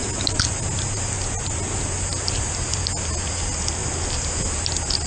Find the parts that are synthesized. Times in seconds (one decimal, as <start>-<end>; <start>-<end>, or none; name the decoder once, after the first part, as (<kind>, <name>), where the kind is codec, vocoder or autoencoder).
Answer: none